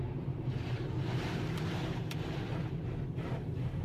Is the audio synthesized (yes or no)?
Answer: yes